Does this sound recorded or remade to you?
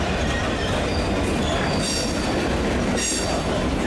recorded